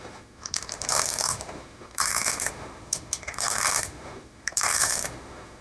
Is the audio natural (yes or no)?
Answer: no